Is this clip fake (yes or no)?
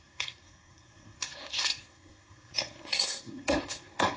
yes